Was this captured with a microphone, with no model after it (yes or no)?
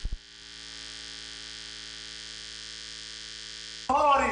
yes